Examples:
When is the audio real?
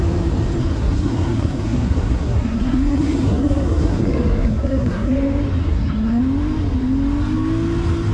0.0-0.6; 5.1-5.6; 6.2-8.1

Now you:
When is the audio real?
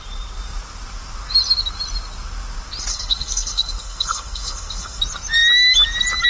0.0-2.9; 5.0-6.3